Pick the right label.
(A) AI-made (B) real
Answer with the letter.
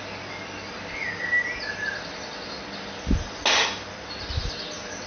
B